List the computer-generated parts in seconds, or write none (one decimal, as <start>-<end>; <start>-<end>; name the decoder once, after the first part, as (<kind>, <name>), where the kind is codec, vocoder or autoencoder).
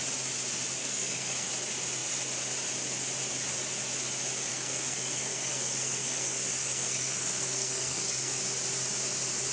0.8-1.5 (codec, SNAC); 4.5-8.4